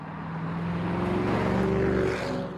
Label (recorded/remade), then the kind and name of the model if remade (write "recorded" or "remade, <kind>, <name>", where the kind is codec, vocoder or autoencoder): recorded